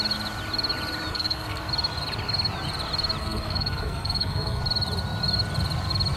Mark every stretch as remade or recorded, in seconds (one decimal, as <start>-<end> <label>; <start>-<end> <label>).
0.0-1.1 recorded; 1.1-1.7 remade; 1.7-3.2 recorded; 3.2-4.6 remade; 4.6-6.2 recorded